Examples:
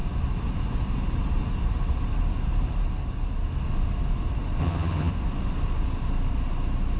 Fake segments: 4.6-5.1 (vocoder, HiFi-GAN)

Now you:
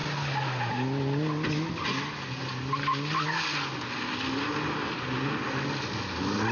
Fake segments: none

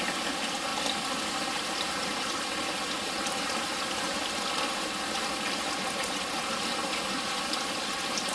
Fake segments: none

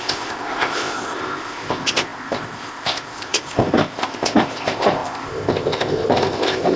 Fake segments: 0.0-6.8 (codec, ZipCodec)